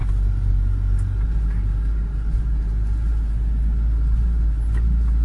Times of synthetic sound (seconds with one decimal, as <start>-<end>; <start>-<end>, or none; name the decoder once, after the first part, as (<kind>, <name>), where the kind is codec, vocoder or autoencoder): none